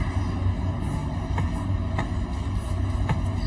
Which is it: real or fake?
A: real